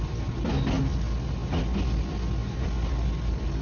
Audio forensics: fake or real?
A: real